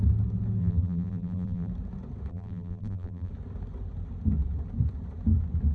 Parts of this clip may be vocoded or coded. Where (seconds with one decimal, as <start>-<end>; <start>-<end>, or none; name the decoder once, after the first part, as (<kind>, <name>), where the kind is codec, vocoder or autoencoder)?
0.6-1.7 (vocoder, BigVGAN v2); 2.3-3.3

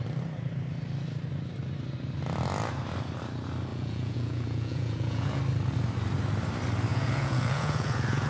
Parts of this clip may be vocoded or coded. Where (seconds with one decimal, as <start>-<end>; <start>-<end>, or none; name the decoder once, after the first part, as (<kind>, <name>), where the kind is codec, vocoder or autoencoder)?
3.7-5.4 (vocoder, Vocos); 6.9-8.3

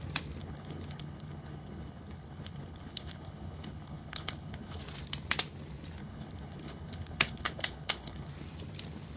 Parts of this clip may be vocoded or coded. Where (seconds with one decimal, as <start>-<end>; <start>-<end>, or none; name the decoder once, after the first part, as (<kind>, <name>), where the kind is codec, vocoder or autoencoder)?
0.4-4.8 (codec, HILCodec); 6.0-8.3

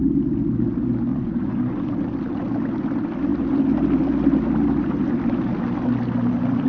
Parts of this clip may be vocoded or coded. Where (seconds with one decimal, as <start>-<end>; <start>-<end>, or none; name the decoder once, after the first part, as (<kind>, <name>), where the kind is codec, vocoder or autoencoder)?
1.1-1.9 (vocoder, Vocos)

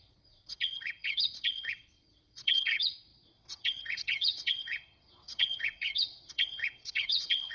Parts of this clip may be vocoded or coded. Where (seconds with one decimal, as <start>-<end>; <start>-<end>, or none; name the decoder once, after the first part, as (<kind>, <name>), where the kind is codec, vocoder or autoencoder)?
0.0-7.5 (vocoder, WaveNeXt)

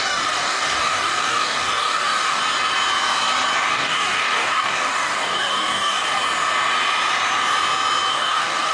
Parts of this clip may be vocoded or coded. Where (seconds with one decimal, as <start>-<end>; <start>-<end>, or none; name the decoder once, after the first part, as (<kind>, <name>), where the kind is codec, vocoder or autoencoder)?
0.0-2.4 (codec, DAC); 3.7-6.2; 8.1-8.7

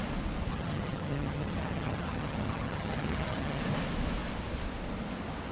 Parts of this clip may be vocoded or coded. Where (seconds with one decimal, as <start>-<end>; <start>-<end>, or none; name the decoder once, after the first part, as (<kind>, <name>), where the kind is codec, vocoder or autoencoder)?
0.5-3.6 (vocoder, HiFi-GAN)

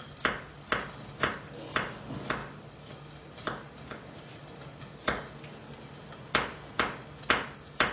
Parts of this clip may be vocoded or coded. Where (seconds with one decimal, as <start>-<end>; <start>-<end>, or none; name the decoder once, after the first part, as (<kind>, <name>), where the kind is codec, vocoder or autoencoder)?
none